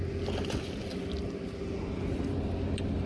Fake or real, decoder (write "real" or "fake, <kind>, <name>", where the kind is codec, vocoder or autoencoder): real